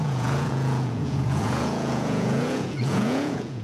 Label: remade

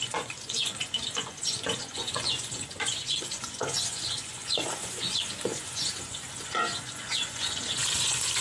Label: remade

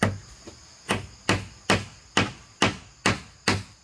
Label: recorded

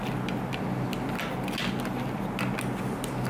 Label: recorded